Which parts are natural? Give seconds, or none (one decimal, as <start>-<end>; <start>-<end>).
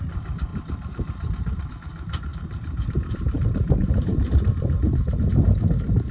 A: 0.0-0.5; 1.7-2.3; 5.2-6.1